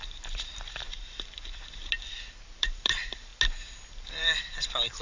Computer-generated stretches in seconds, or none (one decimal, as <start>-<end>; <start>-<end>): 0.0-1.8; 2.6-3.3; 3.9-5.0